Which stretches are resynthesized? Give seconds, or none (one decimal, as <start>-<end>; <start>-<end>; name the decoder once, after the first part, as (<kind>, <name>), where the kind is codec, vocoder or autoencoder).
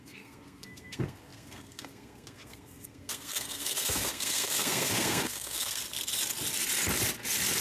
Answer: 0.0-5.8 (codec, SNAC)